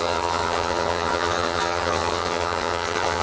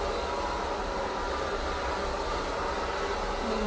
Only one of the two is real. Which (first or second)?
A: second